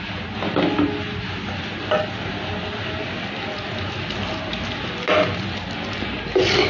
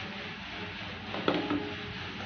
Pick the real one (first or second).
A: first